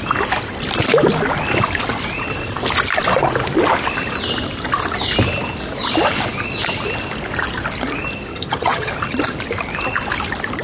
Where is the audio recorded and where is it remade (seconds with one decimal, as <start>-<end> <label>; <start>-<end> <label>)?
0.0-8.3 recorded; 8.3-8.9 remade; 8.9-10.6 recorded

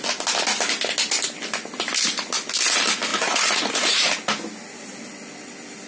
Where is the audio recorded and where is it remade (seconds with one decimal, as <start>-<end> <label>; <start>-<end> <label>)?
0.0-3.1 recorded; 3.1-4.1 remade; 4.1-5.9 recorded

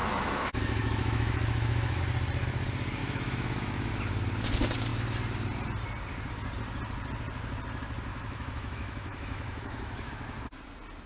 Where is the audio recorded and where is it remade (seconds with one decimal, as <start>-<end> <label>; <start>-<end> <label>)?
0.0-2.0 remade; 2.0-3.0 recorded; 3.0-3.9 remade; 3.9-8.1 recorded; 8.1-10.1 remade; 10.1-11.1 recorded